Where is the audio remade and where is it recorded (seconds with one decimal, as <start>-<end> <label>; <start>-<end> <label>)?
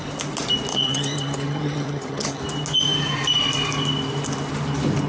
0.0-0.7 recorded; 0.7-2.4 remade; 2.4-5.1 recorded